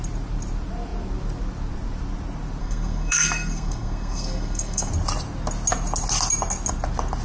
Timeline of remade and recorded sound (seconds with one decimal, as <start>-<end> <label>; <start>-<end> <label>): 0.0-2.6 recorded; 2.6-4.9 remade; 4.9-7.2 recorded